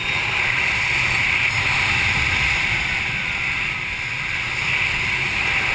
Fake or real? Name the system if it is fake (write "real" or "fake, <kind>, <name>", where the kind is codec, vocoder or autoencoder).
real